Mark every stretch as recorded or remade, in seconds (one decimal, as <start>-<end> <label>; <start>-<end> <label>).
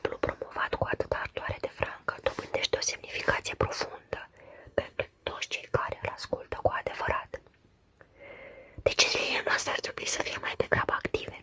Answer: 0.0-4.6 recorded; 4.6-5.8 remade; 5.8-9.2 recorded; 9.2-10.8 remade; 10.8-11.4 recorded